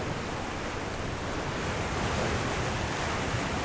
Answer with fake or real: real